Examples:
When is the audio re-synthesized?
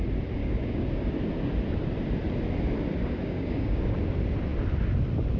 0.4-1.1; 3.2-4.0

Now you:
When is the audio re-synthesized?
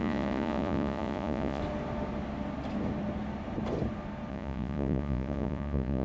0.0-1.6; 4.3-6.0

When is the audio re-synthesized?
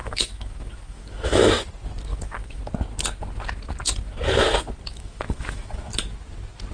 0.0-1.5; 2.1-2.6; 4.9-5.9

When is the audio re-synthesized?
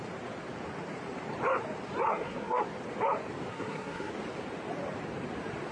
2.1-2.6; 3.5-4.1